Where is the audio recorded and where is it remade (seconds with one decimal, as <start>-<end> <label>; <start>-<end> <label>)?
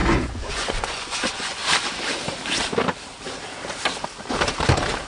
0.0-1.6 remade; 1.6-5.1 recorded